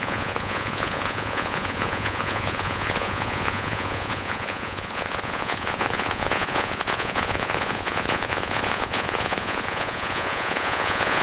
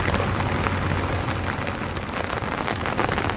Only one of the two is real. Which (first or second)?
second